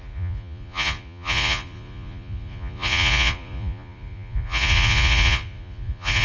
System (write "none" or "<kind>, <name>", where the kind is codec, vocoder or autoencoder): vocoder, Vocos